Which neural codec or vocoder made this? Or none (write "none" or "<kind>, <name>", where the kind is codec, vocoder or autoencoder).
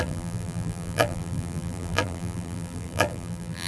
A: vocoder, BigVGAN v2